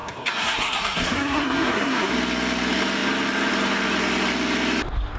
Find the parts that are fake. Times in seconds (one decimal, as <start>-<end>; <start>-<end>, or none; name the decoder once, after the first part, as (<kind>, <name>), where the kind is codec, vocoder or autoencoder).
0.0-2.1 (codec, SNAC)